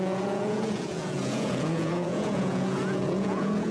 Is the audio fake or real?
fake